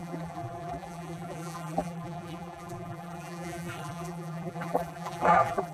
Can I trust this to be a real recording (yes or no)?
no